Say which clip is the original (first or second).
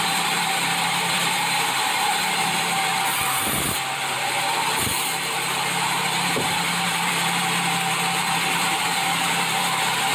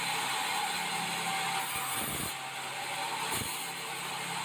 second